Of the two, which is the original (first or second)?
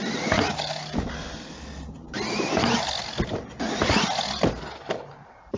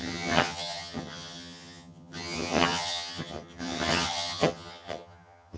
first